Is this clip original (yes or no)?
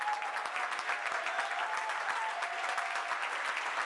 yes